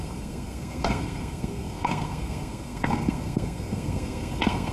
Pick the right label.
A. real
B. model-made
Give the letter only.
B